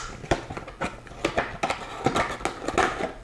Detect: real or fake real